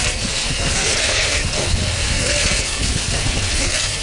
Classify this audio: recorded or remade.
remade